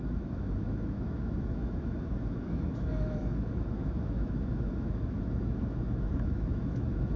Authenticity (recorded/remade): remade